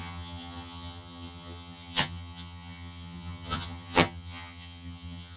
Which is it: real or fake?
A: fake